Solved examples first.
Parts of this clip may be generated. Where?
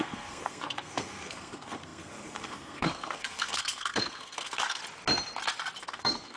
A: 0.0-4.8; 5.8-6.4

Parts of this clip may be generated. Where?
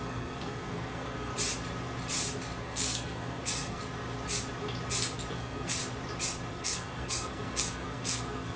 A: 0.0-1.3; 2.6-3.8; 5.3-5.8; 6.5-8.6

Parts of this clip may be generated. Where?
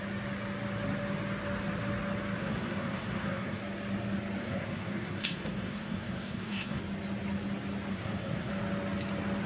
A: 2.4-3.6; 4.4-6.8; 7.9-8.5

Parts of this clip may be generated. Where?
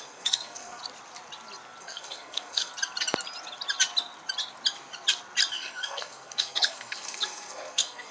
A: 0.0-0.8; 1.8-2.7; 5.5-8.1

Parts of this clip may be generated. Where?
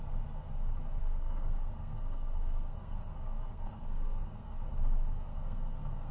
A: 1.0-4.7; 5.3-6.1